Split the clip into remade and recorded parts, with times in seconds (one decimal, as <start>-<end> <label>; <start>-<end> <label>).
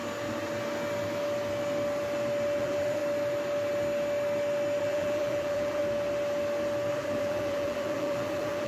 0.0-2.6 recorded; 2.6-3.0 remade; 3.0-4.8 recorded; 4.8-5.8 remade; 5.8-6.9 recorded; 6.9-8.7 remade